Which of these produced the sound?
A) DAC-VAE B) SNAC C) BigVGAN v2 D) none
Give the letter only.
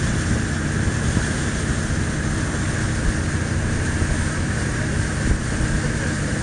D